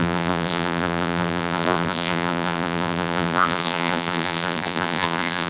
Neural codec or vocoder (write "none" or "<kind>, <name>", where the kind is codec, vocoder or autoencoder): vocoder, BigVGAN v2